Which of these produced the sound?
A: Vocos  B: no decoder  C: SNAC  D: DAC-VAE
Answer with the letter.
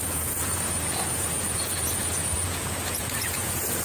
A